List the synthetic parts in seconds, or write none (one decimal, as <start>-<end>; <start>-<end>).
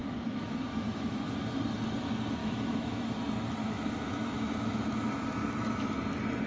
0.0-1.3; 2.4-3.1; 3.6-4.9